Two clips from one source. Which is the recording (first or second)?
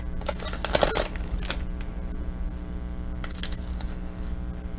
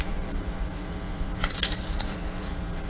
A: first